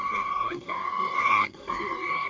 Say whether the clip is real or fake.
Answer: fake